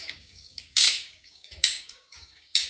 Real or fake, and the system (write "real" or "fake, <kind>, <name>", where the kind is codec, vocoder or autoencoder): fake, codec, DAC